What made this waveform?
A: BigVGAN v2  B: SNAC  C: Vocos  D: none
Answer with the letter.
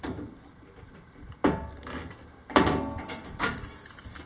D